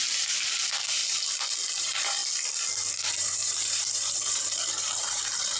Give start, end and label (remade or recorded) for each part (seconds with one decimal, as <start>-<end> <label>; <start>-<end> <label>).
0.0-1.0 remade; 1.0-1.8 recorded; 1.8-2.2 remade; 2.2-2.9 recorded; 2.9-5.6 remade